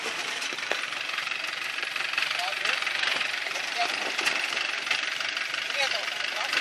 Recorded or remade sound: remade